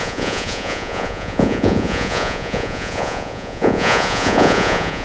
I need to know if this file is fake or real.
fake